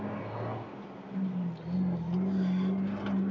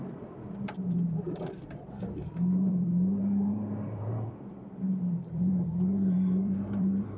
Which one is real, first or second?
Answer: first